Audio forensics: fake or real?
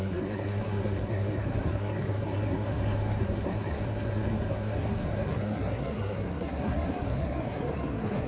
fake